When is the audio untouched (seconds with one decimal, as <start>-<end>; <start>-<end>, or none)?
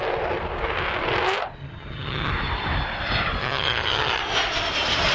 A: 0.0-1.6; 2.3-3.4; 4.2-5.1